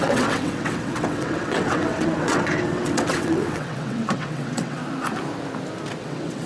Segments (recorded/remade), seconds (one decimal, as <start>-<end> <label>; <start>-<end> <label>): 0.0-4.8 remade; 4.8-6.0 recorded; 6.0-6.5 remade